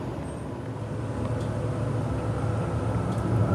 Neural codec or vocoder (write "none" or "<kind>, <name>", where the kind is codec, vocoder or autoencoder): none